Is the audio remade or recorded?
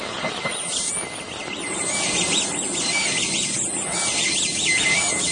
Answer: recorded